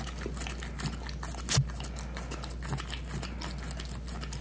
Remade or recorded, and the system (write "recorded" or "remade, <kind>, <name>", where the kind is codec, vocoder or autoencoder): recorded